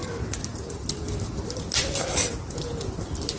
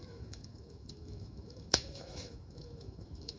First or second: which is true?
first